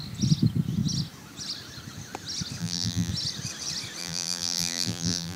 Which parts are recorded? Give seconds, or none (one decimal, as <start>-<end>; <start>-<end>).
0.0-2.6; 3.1-4.0